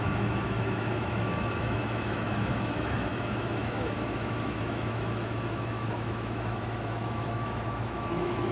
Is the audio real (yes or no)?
no